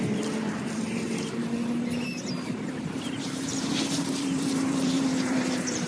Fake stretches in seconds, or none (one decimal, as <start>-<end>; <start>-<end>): 0.0-1.4; 3.2-5.9